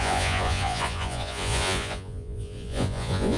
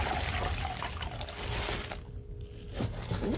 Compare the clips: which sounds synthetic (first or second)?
first